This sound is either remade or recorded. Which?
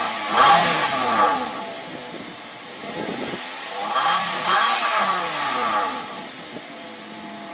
recorded